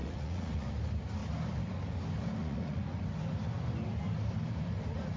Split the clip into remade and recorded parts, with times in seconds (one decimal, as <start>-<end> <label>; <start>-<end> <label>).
0.0-0.7 remade; 0.7-2.4 recorded; 2.4-3.0 remade; 3.0-5.2 recorded